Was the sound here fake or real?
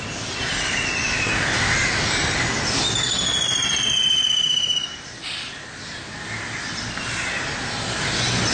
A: real